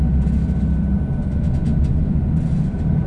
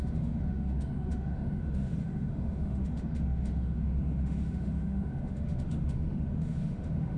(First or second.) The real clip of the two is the first